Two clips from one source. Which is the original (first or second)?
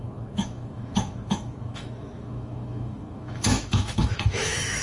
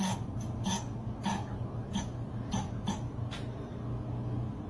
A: second